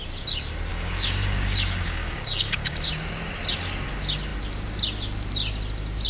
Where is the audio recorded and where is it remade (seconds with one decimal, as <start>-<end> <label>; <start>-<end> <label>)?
0.0-0.7 recorded; 0.7-2.9 remade; 2.9-6.1 recorded